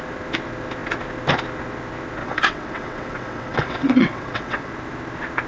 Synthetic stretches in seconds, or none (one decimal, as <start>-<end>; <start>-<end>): 2.2-4.7